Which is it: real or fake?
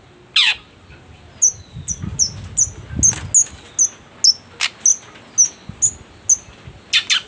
real